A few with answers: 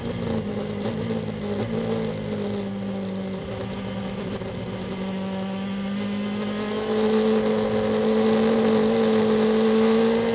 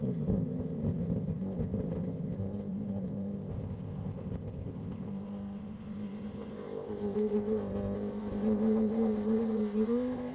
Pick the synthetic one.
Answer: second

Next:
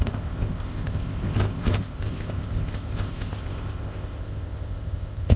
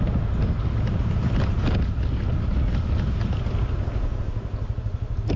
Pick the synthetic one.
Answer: first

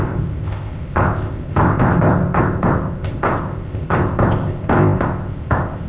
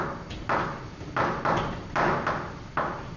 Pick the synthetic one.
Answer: first